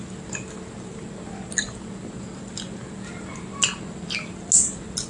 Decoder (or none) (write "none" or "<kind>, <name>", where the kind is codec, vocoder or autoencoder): none